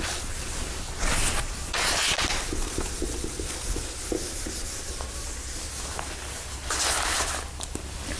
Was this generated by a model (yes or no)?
no